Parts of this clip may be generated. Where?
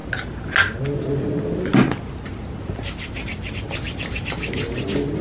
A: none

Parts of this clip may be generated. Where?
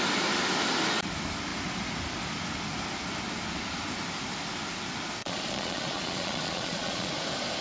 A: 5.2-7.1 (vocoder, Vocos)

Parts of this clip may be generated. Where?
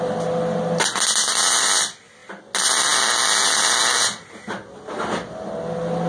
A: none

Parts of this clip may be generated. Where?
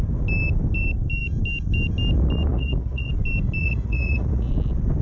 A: 2.5-3.1 (vocoder, Vocos); 3.6-4.5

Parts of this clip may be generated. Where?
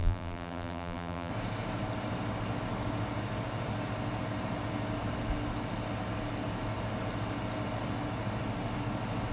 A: 0.0-1.3 (vocoder, BigVGAN v2)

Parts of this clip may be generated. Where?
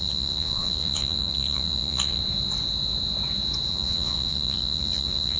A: 0.0-2.2 (vocoder, Vocos); 3.7-5.4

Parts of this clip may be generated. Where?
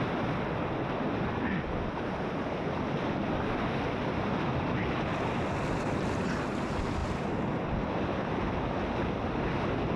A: none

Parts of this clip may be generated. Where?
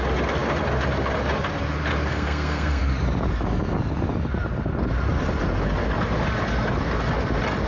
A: 2.1-2.8 (codec, SNAC)